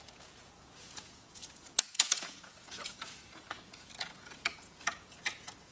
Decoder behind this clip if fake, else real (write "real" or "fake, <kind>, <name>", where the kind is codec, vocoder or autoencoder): fake, vocoder, Vocos